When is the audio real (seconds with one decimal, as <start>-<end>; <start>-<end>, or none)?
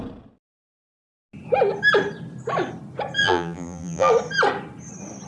0.0-3.2; 4.1-5.3